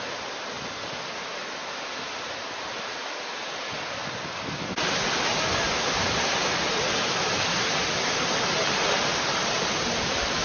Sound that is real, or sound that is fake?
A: real